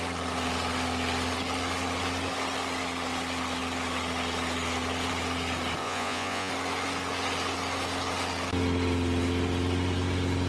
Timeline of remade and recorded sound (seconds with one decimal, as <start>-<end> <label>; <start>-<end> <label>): 0.0-5.8 recorded; 5.8-6.5 remade; 6.5-10.5 recorded